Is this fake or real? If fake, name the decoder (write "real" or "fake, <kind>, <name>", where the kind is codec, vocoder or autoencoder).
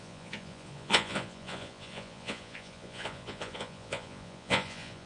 fake, vocoder, Vocos